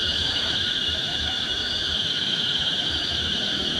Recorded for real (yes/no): no